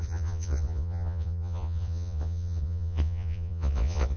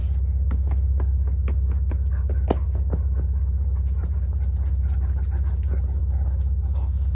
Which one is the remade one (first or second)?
first